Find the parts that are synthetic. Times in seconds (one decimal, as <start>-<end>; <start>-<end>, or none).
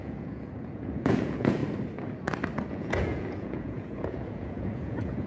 0.0-1.6; 2.7-5.3